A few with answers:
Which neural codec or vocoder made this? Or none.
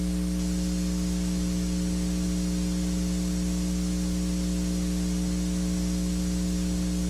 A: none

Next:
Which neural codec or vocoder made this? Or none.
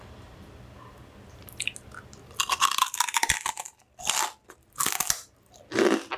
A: none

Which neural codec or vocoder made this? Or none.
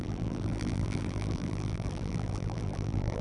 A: vocoder, BigVGAN v2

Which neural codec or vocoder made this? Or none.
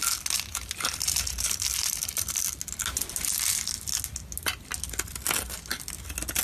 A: none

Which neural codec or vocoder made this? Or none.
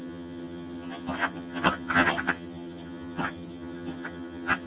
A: vocoder, HiFi-GAN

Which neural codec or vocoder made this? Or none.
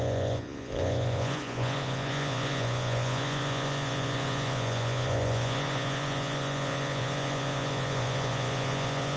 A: vocoder, Vocos